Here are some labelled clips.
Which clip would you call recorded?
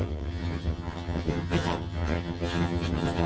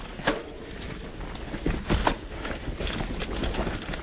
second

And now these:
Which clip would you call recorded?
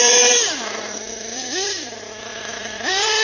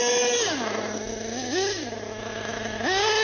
second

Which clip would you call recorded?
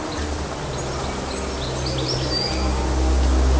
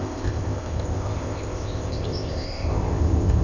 first